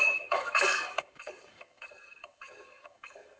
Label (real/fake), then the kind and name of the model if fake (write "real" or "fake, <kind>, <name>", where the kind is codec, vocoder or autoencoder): fake, codec, DAC